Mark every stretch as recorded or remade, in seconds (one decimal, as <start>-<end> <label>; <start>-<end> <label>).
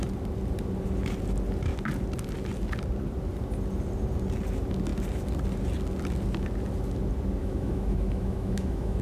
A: 0.0-7.4 recorded; 7.4-9.0 remade